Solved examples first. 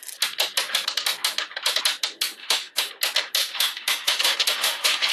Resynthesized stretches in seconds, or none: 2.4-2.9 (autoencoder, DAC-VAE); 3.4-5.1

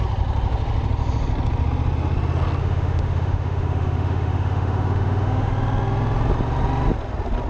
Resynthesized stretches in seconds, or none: 2.6-5.5 (autoencoder, DAC-VAE)

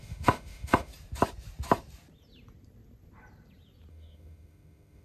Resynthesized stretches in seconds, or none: 0.0-0.9 (autoencoder, DAC-VAE); 3.9-5.0

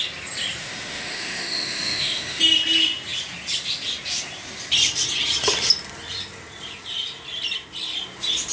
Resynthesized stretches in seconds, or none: 0.6-2.4 (autoencoder, DAC-VAE)

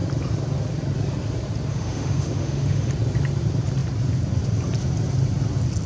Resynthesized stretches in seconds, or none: 1.7-2.9 (autoencoder, DAC-VAE)

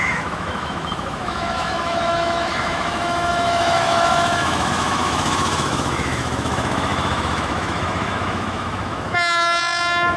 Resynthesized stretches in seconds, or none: 0.0-10.2 (autoencoder, DAC-VAE)

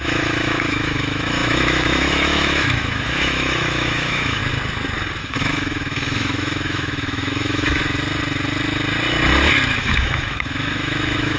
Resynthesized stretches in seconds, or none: 0.0-4.4 (autoencoder, DAC-VAE); 5.2-7.8; 9.8-11.4